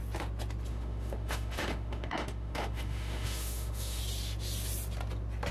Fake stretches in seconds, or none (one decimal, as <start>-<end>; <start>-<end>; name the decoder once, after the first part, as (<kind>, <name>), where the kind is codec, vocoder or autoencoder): 0.7-4.0 (autoencoder, DAC-VAE)